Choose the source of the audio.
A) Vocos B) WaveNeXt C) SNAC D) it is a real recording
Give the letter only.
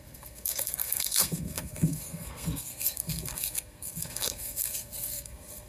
C